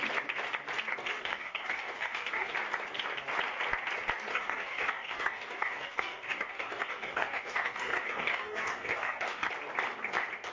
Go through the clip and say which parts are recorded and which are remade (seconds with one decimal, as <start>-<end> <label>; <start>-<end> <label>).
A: 0.0-1.0 recorded; 1.0-2.5 remade; 2.5-4.3 recorded; 4.3-9.5 remade; 9.5-10.5 recorded